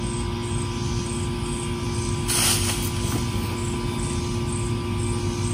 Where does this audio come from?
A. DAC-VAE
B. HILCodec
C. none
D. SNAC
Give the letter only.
C